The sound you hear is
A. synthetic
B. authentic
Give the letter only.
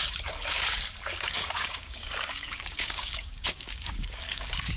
A